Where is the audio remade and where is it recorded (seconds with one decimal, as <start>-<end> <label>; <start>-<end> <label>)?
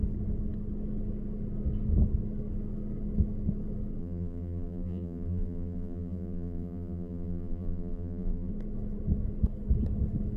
0.0-4.0 recorded; 4.0-8.5 remade; 8.5-10.4 recorded